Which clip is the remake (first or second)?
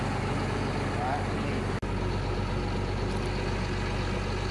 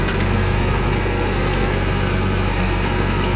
second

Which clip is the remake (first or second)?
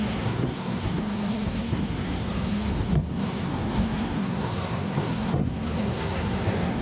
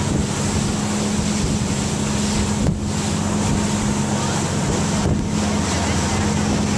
first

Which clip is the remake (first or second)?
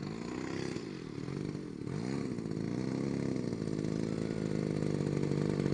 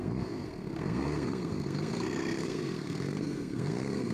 second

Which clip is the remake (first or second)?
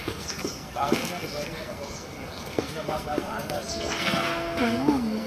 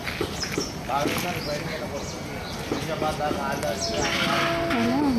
first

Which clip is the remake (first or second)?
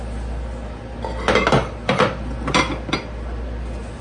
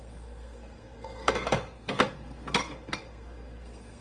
second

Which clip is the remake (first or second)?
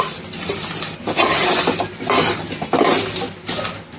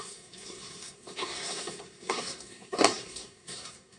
second